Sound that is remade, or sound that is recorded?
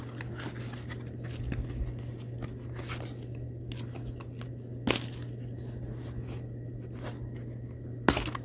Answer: recorded